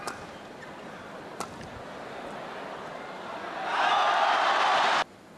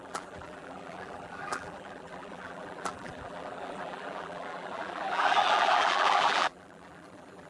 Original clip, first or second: first